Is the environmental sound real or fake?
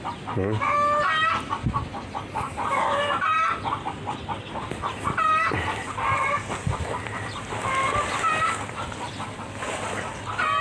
real